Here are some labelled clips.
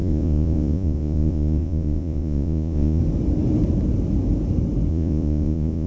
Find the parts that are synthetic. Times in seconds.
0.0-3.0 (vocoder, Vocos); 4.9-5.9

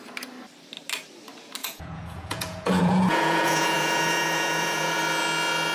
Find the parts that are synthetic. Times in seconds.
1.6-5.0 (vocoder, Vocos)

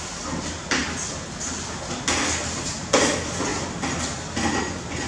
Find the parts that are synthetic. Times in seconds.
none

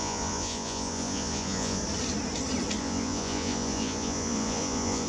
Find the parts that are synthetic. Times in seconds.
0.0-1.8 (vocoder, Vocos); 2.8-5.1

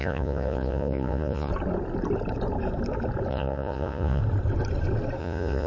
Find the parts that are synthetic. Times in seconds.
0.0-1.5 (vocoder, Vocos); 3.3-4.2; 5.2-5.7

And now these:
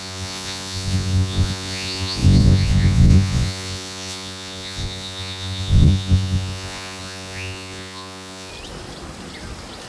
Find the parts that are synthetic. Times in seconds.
0.0-8.5 (vocoder, Vocos)

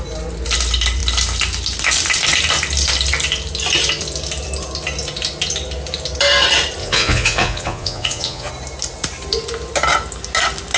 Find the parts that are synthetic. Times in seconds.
6.8-8.5 (vocoder, Vocos)

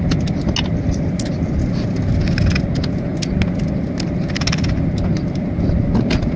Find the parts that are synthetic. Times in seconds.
none